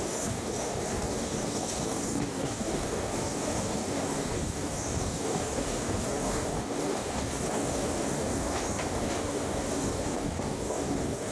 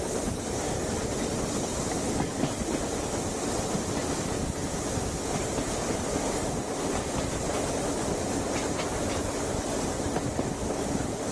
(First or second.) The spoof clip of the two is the first